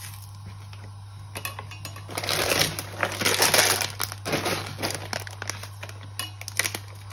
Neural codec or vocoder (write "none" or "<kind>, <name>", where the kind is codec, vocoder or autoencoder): none